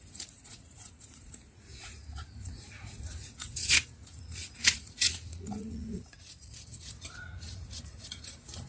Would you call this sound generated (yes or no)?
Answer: yes